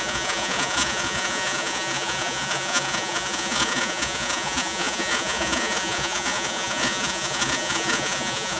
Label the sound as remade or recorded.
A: remade